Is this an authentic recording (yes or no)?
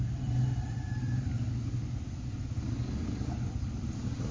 yes